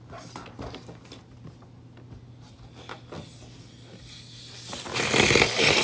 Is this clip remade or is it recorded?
recorded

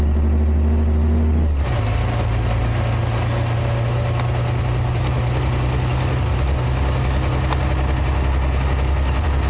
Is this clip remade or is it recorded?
recorded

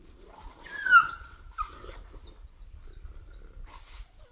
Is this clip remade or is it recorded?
recorded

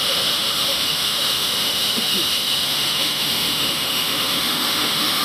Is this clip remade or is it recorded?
remade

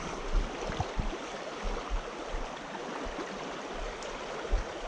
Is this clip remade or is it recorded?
recorded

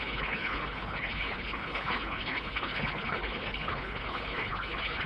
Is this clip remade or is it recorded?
remade